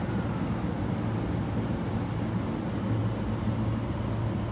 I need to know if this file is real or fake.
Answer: real